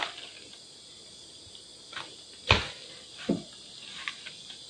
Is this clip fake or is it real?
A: real